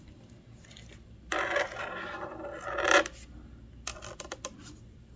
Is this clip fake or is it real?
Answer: real